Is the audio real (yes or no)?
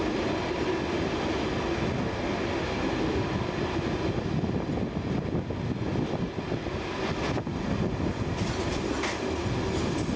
yes